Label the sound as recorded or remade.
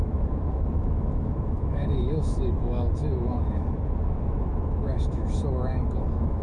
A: remade